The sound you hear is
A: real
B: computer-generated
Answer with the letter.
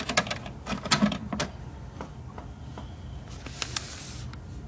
A